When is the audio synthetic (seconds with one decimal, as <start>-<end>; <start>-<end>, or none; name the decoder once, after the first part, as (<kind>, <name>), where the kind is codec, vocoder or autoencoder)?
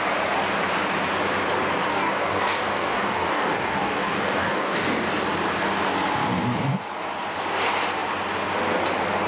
1.9-5.1 (codec, DAC)